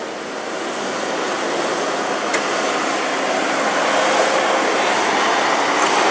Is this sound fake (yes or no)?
no